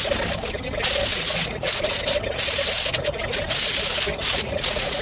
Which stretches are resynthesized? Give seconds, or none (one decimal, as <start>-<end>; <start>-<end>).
1.1-1.7; 4.1-5.0